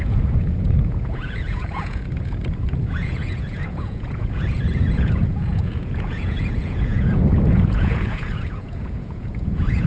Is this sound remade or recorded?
remade